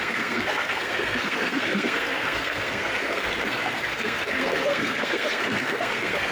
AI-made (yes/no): yes